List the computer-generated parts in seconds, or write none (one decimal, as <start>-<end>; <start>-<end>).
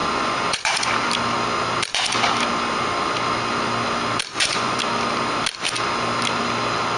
0.0-0.9; 4.3-4.8